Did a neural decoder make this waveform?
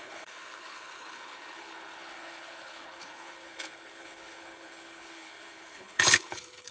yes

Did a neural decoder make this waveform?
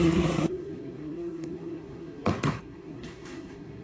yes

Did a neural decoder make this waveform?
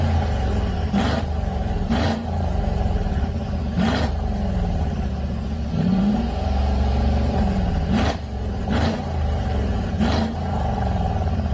yes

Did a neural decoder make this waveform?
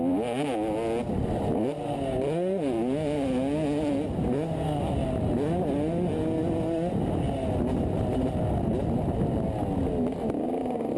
no